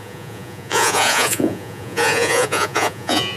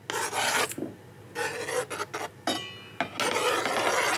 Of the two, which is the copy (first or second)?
first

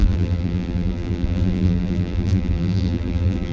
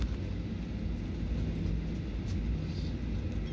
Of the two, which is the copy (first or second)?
first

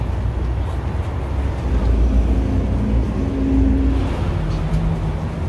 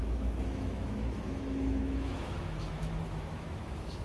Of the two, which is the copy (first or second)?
second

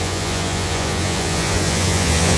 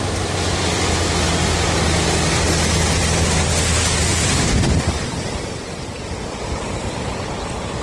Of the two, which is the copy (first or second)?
first